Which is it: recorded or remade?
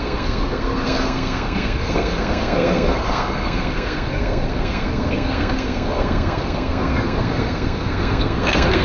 remade